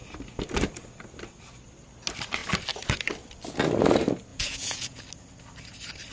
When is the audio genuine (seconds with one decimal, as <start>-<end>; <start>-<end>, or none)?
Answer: 0.0-4.3; 5.0-6.1